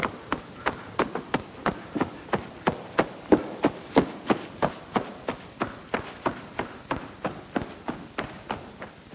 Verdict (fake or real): real